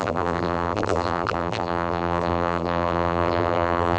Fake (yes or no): yes